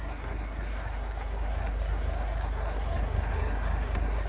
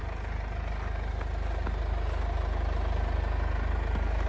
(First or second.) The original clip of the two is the second